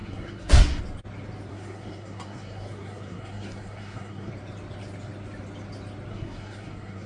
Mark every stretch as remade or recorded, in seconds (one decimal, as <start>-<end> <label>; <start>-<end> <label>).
0.0-0.8 remade; 0.8-1.5 recorded; 1.5-4.3 remade; 4.3-6.1 recorded; 6.1-7.1 remade